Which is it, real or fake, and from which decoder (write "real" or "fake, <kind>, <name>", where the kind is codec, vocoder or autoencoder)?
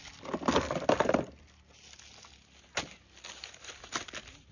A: real